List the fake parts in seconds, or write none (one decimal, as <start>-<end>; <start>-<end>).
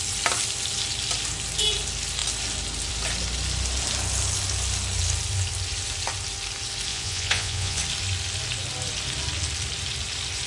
6.9-7.8